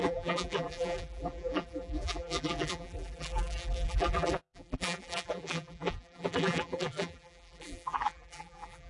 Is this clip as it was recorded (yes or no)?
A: no